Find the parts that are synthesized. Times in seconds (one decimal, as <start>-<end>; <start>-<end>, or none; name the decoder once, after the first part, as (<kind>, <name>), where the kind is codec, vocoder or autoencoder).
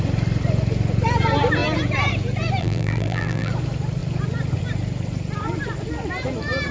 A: 2.6-3.5 (vocoder, BigVGAN v2)